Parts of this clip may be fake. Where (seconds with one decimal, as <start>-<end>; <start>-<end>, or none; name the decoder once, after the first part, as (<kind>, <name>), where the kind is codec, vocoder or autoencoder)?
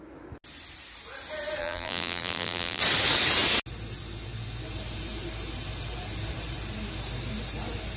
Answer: 1.6-2.8 (vocoder, BigVGAN v2)